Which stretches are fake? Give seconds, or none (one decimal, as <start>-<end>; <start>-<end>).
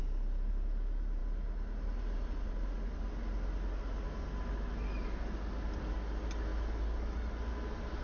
none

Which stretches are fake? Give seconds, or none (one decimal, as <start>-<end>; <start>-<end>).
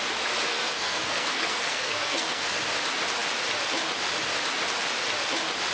0.5-2.6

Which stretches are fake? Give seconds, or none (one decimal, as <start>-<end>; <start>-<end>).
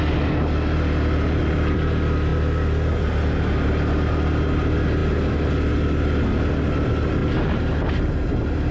none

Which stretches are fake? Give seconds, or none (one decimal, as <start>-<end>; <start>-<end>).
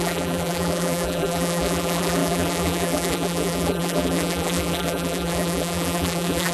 0.0-6.5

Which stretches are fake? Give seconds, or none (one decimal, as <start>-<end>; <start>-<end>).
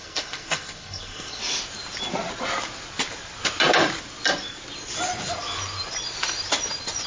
0.0-1.4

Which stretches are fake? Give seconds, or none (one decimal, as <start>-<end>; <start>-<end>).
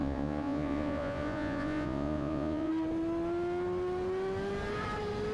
0.0-2.7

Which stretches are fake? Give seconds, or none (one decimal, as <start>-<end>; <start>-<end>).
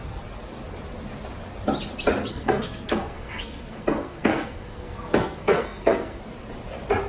2.3-6.2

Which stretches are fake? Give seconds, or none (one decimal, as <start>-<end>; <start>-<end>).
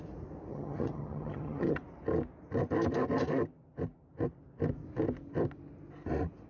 0.5-1.8